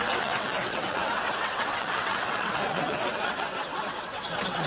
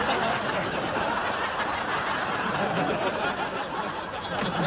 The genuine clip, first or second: second